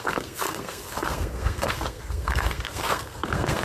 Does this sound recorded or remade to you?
remade